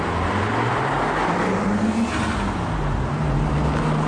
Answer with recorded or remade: recorded